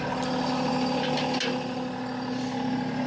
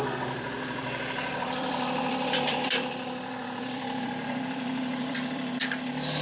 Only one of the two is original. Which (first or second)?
first